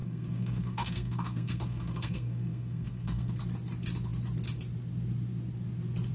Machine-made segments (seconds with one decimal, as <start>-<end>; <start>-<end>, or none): 0.0-3.3